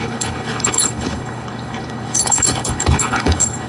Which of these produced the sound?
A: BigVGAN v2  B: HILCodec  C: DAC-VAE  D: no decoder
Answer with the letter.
B